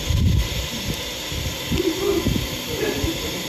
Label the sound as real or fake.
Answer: real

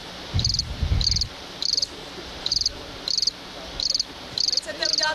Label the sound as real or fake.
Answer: fake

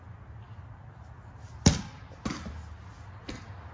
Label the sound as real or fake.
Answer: real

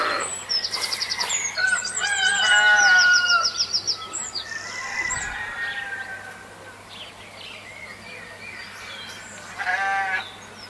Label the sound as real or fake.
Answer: fake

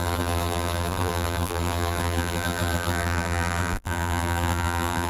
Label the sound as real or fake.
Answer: fake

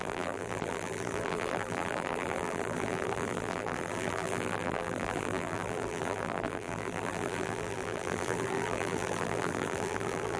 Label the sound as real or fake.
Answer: fake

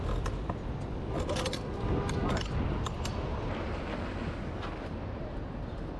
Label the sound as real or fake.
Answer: real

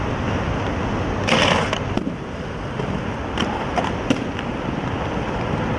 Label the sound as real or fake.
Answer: fake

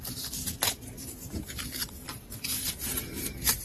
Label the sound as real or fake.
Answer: real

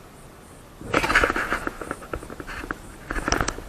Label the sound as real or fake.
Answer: real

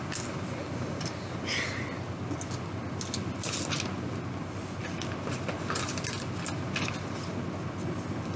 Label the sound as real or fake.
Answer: real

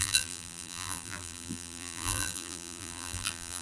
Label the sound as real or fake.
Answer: fake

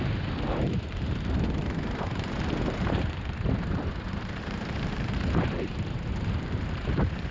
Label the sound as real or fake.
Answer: fake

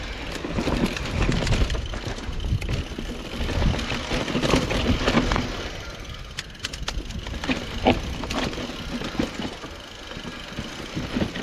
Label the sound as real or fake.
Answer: real